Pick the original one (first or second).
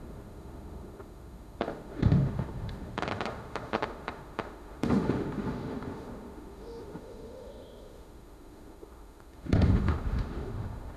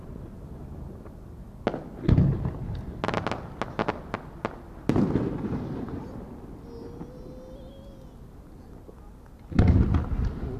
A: second